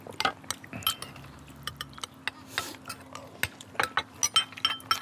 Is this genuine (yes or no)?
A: yes